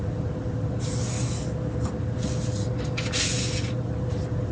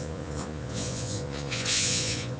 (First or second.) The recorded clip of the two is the first